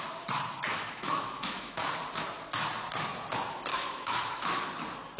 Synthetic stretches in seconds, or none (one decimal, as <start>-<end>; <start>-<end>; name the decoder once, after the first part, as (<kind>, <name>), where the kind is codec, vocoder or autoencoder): 0.7-1.8 (autoencoder, DAC-VAE); 3.7-4.5